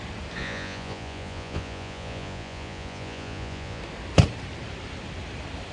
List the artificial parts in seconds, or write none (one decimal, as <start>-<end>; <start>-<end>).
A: 0.4-3.8